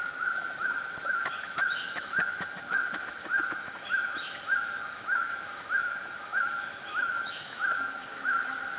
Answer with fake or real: fake